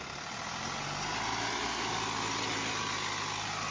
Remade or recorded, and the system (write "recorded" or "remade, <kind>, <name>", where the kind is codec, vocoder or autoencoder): recorded